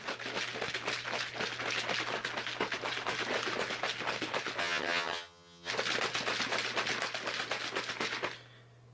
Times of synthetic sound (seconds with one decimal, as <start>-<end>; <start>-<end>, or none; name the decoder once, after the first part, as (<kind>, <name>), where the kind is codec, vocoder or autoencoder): 4.6-5.7 (vocoder, HiFi-GAN)